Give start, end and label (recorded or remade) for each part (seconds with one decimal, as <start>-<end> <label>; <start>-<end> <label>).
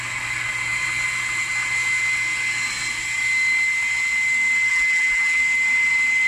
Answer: 0.0-4.7 recorded; 4.7-5.4 remade; 5.4-6.3 recorded